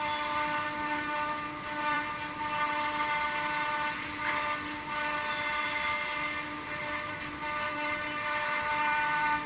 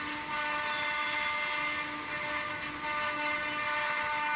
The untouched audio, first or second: second